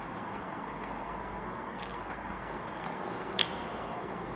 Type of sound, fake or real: fake